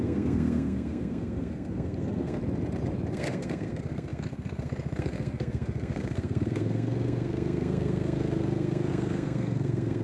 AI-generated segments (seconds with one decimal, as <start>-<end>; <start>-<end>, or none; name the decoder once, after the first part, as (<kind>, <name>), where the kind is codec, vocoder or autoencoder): 0.0-2.4 (codec, SNAC); 3.1-10.0